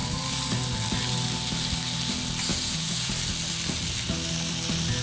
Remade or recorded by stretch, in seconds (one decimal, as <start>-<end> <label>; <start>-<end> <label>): 0.0-2.5 recorded; 2.5-3.1 remade; 3.1-5.0 recorded